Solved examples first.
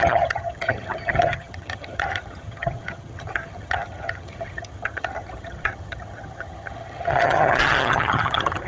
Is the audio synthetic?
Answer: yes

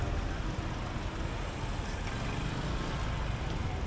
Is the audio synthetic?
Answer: no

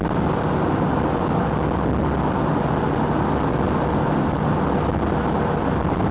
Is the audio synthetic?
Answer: no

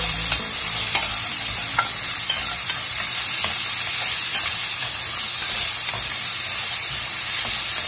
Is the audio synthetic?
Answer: yes